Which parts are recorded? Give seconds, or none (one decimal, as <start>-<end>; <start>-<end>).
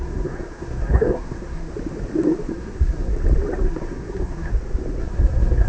1.7-2.5; 3.1-3.6; 4.5-5.0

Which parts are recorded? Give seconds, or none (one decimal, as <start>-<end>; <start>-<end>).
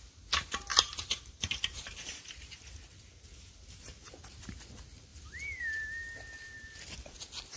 0.0-0.7; 4.6-5.1; 5.6-7.6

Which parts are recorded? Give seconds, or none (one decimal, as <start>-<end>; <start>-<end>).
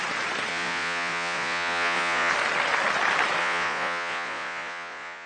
0.0-0.5; 2.3-3.4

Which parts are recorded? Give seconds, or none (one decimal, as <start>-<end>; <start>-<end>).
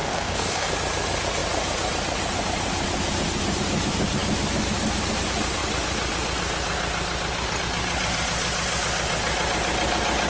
0.7-10.3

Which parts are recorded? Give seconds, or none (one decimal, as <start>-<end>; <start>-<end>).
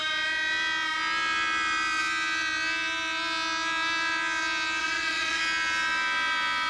0.0-4.8; 5.4-6.7